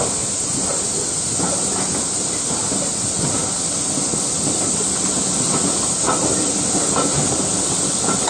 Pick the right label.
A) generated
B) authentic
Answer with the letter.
B